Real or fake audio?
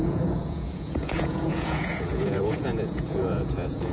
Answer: fake